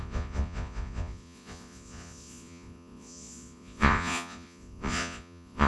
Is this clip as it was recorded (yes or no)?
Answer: no